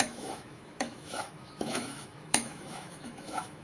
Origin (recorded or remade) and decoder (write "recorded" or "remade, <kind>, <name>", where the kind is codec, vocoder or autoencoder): remade, autoencoder, DAC-VAE